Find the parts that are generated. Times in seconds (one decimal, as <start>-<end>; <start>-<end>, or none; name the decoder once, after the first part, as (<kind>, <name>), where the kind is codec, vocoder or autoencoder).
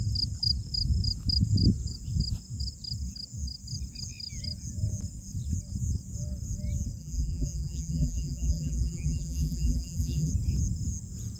7.0-10.3 (vocoder, BigVGAN v2)